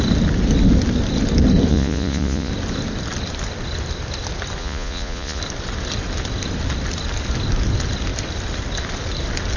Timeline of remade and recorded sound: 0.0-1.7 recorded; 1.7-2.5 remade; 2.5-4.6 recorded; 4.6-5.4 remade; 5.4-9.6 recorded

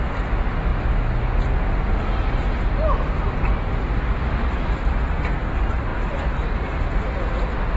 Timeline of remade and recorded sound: 0.0-5.9 recorded; 5.9-6.9 remade; 6.9-7.8 recorded

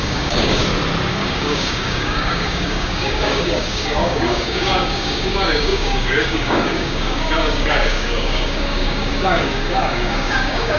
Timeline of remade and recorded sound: 0.0-0.6 remade; 0.6-1.1 recorded; 1.1-10.8 remade

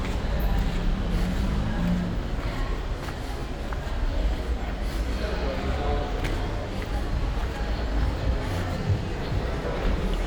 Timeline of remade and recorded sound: 0.0-10.3 recorded

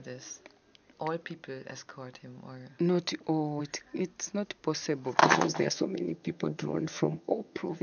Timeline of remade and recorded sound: 0.0-5.2 recorded; 5.2-7.8 remade